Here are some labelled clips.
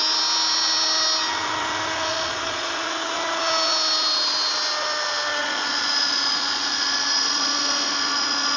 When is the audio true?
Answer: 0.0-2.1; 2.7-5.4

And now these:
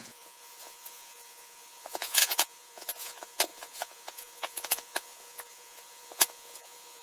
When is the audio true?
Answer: none

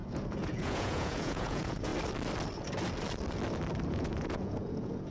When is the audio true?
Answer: 1.9-3.9

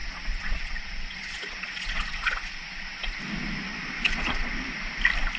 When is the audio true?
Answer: 3.2-3.7; 4.5-5.4

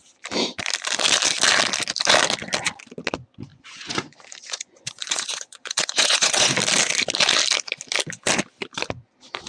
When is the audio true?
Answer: 0.0-3.5; 6.6-9.5